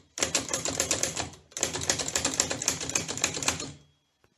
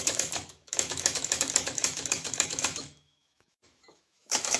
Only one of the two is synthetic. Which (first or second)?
second